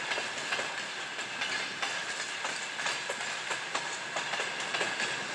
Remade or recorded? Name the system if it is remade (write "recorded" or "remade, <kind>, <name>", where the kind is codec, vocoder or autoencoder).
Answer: recorded